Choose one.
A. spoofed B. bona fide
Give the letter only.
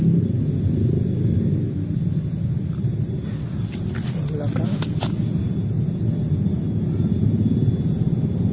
B